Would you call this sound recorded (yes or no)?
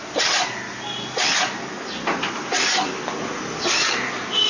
yes